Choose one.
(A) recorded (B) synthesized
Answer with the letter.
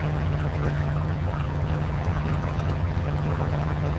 B